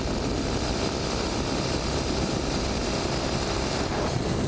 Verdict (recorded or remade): recorded